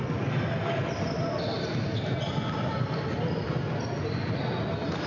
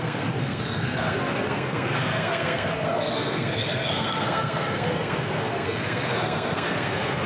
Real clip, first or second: first